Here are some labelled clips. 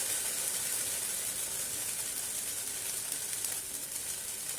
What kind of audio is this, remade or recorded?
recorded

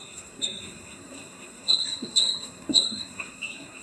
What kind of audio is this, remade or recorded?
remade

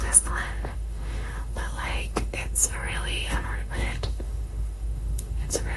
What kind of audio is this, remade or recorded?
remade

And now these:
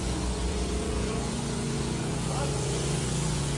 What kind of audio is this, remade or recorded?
remade